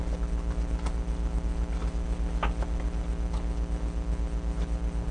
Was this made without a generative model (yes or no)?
yes